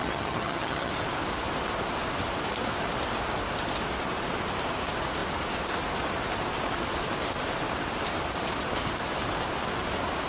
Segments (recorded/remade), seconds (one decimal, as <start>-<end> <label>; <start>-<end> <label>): 0.0-0.9 remade; 0.9-10.3 recorded